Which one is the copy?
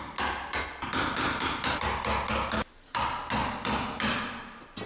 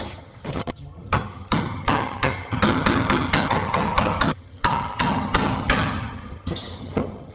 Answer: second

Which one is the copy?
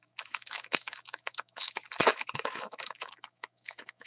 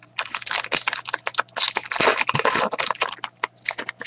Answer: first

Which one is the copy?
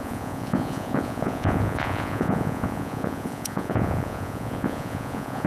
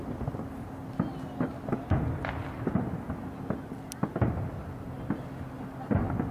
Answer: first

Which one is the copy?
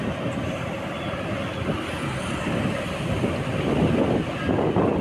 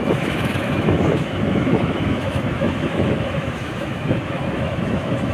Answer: second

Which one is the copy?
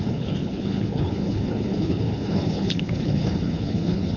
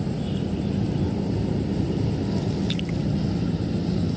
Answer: first